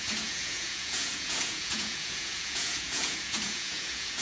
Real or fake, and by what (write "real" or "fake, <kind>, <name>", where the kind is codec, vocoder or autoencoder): fake, vocoder, Vocos